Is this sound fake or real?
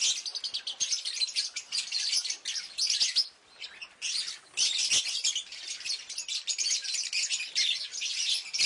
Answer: real